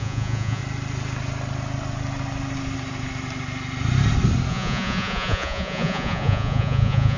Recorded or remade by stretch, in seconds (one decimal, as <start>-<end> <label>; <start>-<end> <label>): 0.0-0.6 remade; 0.6-4.5 recorded; 4.5-7.2 remade

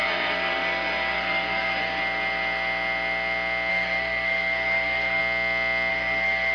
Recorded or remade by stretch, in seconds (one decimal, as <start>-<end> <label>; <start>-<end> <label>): 0.0-2.0 remade; 2.0-3.7 recorded; 3.7-5.2 remade; 5.2-5.9 recorded; 5.9-6.5 remade

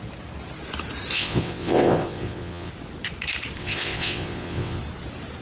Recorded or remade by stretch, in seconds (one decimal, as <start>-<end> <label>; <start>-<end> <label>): 0.0-1.1 recorded; 1.1-2.7 remade; 2.7-3.6 recorded; 3.6-4.8 remade; 4.8-5.4 recorded

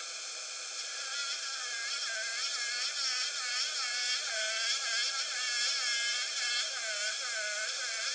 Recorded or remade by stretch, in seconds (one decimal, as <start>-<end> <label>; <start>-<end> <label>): 0.0-8.1 recorded